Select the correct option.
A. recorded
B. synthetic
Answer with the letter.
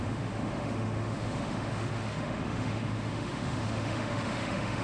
B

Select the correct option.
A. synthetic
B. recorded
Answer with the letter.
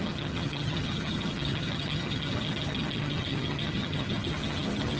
A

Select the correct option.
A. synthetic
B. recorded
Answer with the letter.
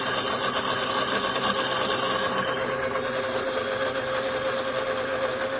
B